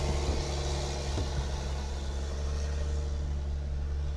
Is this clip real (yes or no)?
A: yes